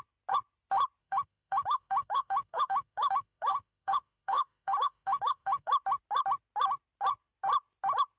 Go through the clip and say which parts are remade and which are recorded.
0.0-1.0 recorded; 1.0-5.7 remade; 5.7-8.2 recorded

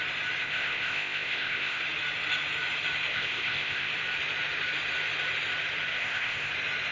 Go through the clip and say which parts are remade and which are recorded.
0.0-0.4 recorded; 0.4-1.8 remade; 1.8-3.1 recorded; 3.1-3.9 remade; 3.9-5.9 recorded; 5.9-6.5 remade; 6.5-6.9 recorded

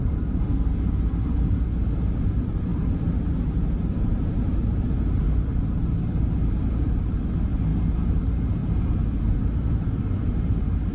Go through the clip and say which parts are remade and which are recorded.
0.0-10.9 remade

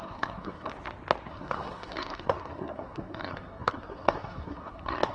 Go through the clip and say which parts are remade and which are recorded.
0.0-0.7 remade; 0.7-1.3 recorded; 1.3-5.1 remade